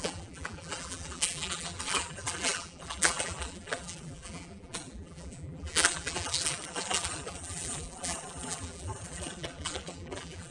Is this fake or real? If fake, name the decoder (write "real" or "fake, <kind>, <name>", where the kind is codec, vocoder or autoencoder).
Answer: fake, vocoder, BigVGAN v2